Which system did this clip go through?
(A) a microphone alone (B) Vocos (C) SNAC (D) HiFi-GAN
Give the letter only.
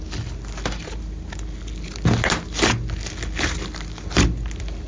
A